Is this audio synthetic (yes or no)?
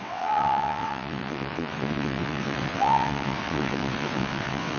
yes